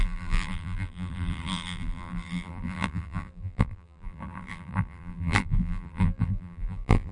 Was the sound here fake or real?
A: fake